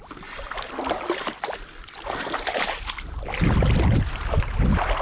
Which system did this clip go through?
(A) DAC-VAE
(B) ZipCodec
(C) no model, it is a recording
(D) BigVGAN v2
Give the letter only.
C